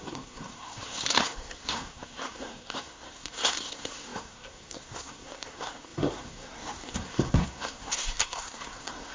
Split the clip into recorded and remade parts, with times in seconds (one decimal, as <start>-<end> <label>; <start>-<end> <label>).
0.0-9.1 remade